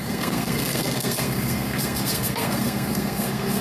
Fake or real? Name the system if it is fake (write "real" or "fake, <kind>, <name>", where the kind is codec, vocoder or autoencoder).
fake, codec, SNAC